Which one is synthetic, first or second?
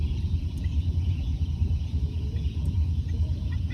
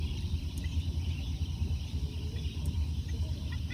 first